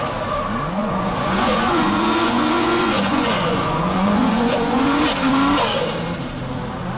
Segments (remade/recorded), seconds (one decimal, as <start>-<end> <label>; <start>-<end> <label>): 0.0-0.8 recorded; 0.8-5.0 remade; 5.0-7.0 recorded